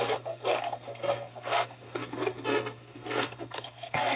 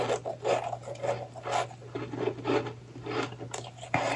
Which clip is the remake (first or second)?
first